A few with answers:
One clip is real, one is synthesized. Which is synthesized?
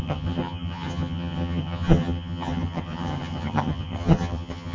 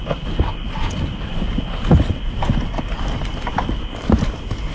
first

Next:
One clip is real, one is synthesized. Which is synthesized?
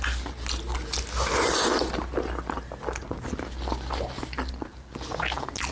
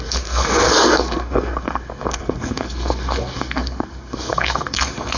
second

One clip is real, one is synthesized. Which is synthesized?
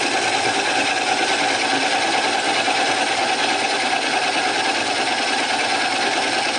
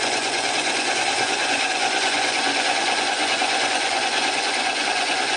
second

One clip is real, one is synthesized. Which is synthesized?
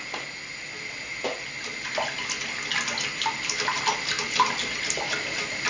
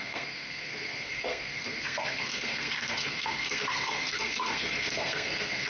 second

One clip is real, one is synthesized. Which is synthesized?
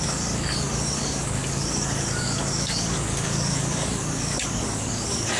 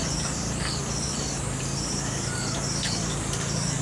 first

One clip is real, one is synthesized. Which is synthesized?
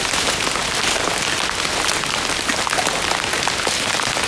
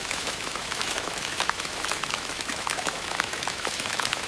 second